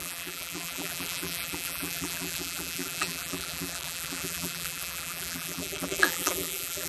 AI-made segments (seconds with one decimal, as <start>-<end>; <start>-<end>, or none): 0.0-6.9